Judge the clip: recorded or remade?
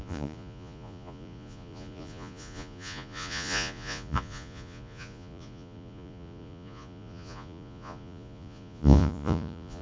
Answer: remade